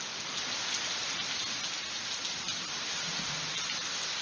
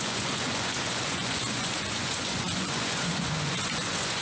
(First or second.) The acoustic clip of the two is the first